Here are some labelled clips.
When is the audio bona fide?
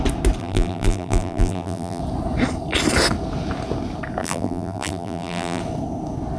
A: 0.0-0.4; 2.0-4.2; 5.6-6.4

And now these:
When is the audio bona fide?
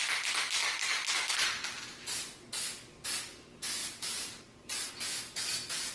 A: 0.0-3.8; 4.9-5.9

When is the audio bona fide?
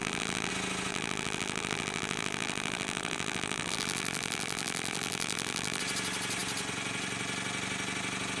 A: 0.5-0.9; 5.8-8.4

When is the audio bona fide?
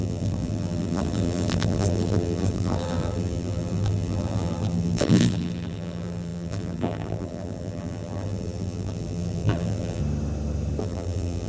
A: 10.0-10.8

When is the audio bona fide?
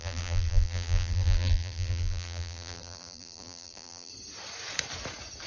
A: 4.1-5.5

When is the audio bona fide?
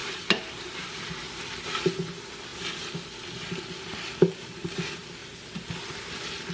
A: 0.9-6.5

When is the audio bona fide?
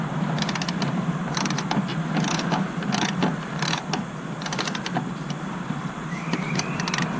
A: 1.2-5.5